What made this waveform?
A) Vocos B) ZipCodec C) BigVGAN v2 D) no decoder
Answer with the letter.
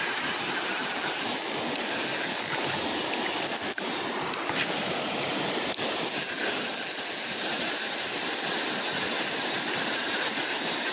D